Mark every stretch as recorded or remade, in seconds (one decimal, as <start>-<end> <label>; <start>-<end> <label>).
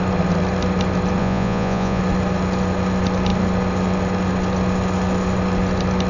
0.0-1.2 recorded; 1.2-2.0 remade; 2.0-6.1 recorded